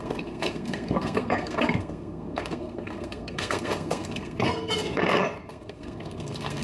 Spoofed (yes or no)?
yes